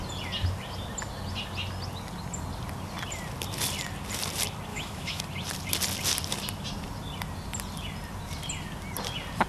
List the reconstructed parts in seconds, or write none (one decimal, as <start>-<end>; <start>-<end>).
4.7-5.2